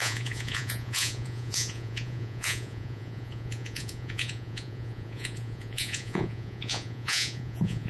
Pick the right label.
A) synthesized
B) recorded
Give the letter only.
A